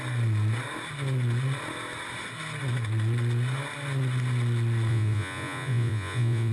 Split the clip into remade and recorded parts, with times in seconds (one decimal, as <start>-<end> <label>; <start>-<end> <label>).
0.0-4.9 recorded; 4.9-6.5 remade